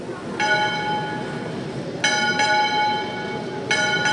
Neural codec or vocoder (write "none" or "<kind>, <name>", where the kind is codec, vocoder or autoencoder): none